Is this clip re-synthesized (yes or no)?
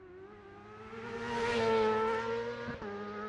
no